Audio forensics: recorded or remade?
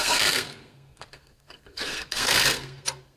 remade